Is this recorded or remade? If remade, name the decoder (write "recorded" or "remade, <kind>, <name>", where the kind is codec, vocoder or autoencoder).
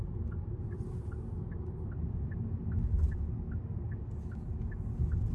recorded